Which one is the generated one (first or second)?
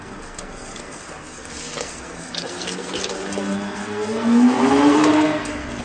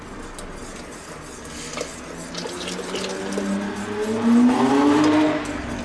first